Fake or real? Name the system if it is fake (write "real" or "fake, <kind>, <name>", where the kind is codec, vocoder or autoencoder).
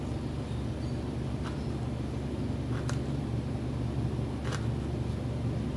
real